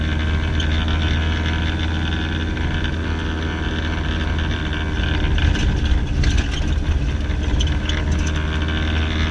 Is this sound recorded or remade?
recorded